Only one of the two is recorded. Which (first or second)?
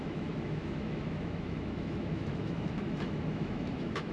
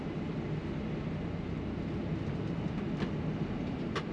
second